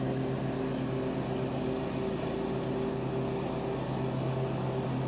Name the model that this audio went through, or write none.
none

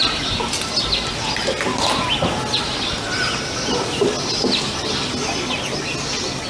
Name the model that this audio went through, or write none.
none